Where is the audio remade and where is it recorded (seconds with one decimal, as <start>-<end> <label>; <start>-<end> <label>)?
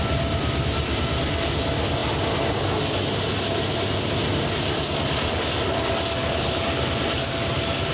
0.0-7.9 recorded